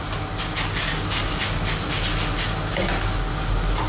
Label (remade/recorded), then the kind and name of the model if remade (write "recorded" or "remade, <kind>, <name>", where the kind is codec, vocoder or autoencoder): recorded